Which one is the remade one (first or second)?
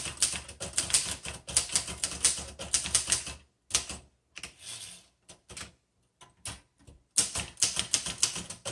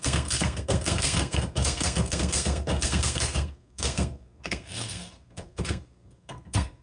second